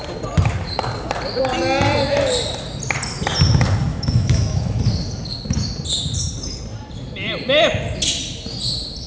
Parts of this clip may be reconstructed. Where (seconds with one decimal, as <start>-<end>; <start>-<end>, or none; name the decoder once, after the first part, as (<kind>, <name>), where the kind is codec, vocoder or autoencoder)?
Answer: 3.9-4.8 (autoencoder, DAC-VAE)